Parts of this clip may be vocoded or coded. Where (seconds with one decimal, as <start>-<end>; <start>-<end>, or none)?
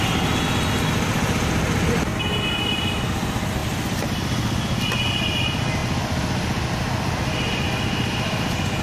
3.6-4.8; 5.8-6.7